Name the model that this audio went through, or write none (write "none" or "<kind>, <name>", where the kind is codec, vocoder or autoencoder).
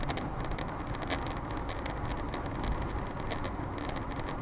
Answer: none